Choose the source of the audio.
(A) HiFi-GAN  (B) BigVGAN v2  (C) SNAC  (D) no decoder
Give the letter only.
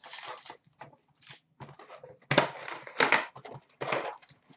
D